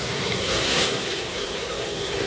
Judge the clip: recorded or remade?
remade